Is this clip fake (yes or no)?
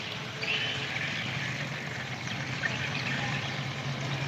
yes